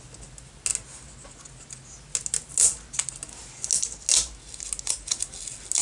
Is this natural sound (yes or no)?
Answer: yes